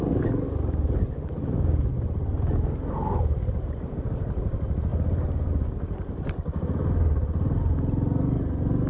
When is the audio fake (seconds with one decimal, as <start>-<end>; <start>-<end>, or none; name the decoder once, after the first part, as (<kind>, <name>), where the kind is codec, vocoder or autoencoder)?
none

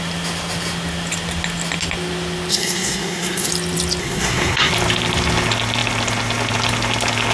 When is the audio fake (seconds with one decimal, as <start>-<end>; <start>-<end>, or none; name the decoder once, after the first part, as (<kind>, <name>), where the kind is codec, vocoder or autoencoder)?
2.5-3.5 (codec, SNAC); 4.0-4.7

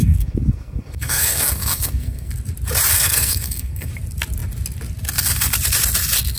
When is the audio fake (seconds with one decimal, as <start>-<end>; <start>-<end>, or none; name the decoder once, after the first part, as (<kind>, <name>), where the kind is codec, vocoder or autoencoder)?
0.0-2.3 (codec, SNAC); 2.9-3.9

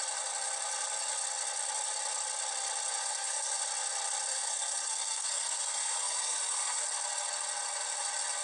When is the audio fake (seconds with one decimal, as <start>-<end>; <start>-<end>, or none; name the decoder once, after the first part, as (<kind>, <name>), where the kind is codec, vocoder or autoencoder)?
3.0-3.6 (codec, SNAC); 4.3-6.8